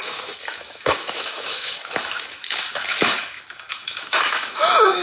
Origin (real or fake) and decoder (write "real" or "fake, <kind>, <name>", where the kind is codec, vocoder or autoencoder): fake, autoencoder, DAC-VAE